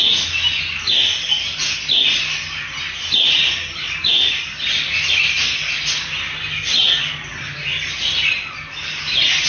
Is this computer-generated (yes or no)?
no